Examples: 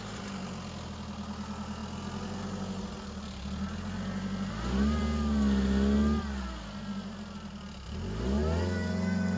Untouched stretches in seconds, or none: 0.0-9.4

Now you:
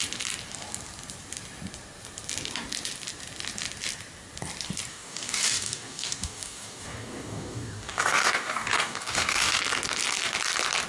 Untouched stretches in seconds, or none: 0.0-4.9; 9.6-10.9